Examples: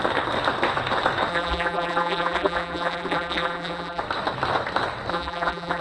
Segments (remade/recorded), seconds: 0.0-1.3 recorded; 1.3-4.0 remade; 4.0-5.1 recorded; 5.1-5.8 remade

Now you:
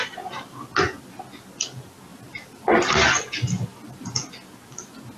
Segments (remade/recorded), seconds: 0.0-2.1 recorded; 2.1-2.9 remade; 2.9-3.7 recorded; 3.7-4.3 remade; 4.3-5.2 recorded